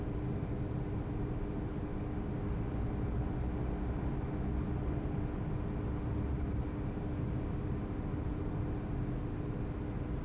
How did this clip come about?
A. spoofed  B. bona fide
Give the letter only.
B